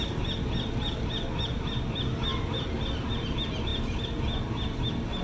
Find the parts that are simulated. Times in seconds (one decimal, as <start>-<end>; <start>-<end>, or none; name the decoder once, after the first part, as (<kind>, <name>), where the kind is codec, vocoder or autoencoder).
none